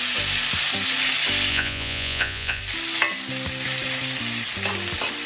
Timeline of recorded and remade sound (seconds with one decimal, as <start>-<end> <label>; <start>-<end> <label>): 0.0-1.5 recorded; 1.5-2.6 remade; 2.6-5.3 recorded